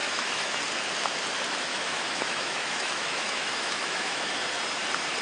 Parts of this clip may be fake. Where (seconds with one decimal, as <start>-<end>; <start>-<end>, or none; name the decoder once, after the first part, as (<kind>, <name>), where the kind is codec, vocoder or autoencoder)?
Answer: 0.0-0.6 (autoencoder, DAC-VAE); 1.7-4.4